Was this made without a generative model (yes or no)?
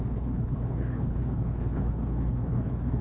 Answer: no